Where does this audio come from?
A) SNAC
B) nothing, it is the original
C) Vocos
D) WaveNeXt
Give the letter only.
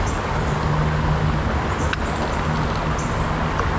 B